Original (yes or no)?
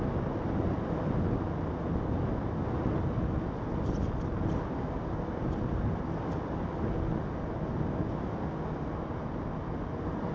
yes